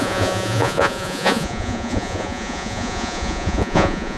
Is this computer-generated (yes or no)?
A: yes